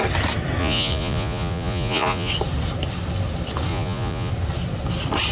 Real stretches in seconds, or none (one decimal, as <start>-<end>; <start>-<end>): 0.0-0.6; 2.3-3.7; 4.3-5.3